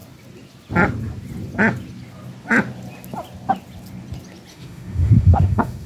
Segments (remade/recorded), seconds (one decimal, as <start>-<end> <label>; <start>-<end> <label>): 0.0-4.5 recorded; 4.5-5.9 remade